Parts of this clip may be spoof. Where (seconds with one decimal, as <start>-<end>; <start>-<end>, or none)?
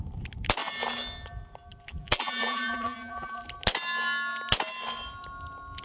1.9-3.4